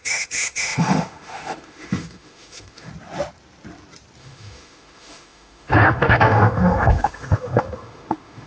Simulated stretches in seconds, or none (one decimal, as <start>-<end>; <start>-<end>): 0.0-2.9; 4.2-8.5